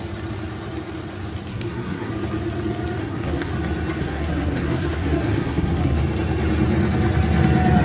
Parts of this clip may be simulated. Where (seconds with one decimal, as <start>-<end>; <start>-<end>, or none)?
1.5-2.1; 3.0-3.5; 4.0-6.0